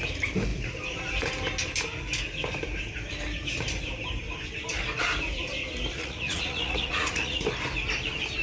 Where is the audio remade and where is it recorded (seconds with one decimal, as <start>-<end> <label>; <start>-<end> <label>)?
0.0-6.0 recorded; 6.0-7.4 remade; 7.4-8.4 recorded